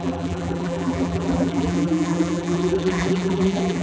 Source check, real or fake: fake